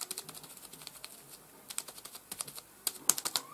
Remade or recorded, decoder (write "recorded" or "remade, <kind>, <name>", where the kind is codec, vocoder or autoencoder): recorded